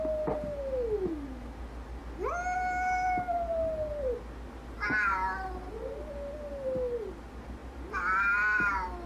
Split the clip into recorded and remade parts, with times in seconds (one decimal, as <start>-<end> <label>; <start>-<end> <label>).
0.0-9.1 recorded